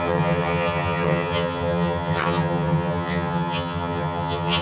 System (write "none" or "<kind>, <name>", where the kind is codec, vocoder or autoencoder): vocoder, HiFi-GAN